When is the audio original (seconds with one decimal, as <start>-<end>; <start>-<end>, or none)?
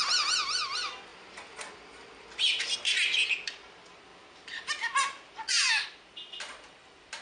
0.0-7.2